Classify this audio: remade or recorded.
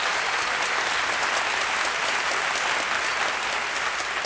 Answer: recorded